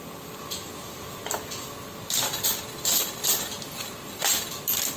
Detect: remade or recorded recorded